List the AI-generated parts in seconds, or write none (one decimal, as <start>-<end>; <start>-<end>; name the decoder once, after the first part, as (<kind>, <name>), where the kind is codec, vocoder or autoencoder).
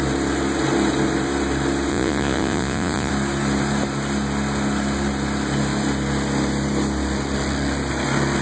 1.9-3.1 (vocoder, Vocos)